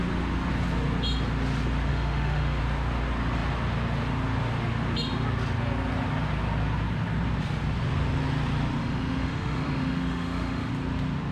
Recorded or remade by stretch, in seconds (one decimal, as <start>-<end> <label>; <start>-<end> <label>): 0.0-1.9 recorded; 1.9-2.6 remade; 2.6-8.8 recorded; 8.8-10.7 remade; 10.7-11.3 recorded